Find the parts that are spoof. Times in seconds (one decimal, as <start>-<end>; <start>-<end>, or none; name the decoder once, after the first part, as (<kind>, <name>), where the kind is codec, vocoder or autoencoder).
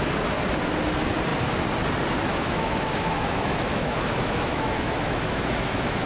2.3-6.1 (autoencoder, DAC-VAE)